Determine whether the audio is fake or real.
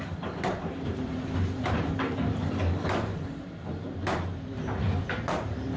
fake